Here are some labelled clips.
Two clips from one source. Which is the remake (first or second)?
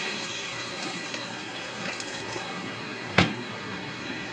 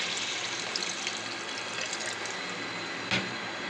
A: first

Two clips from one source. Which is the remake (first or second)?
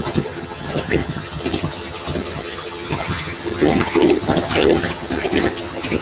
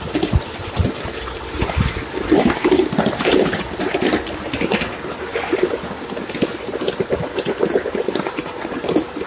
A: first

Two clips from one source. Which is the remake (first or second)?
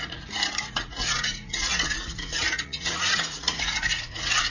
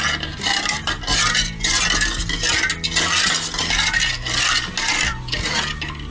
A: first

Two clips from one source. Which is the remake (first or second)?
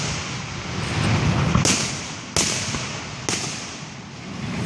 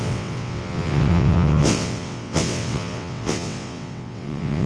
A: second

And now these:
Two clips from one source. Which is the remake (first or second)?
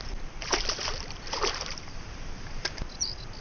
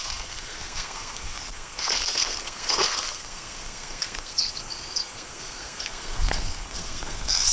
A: second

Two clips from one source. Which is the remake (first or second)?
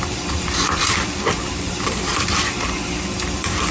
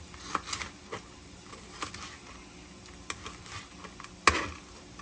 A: first